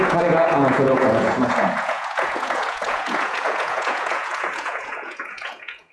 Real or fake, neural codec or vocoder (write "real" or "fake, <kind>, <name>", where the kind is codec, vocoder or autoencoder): fake, vocoder, Vocos